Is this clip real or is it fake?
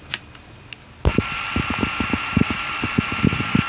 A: real